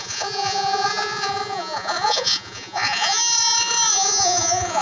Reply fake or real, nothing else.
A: fake